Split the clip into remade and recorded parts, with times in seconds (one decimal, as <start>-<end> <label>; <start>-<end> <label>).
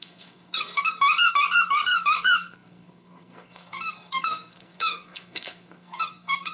0.0-6.5 remade